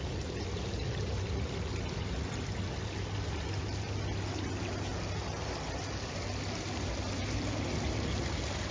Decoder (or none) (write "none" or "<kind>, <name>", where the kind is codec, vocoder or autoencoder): none